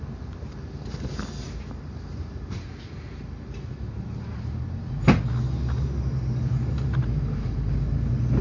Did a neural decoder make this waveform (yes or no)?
no